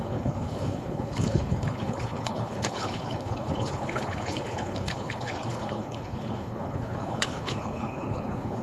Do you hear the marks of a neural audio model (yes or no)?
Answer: yes